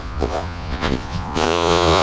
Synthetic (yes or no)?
yes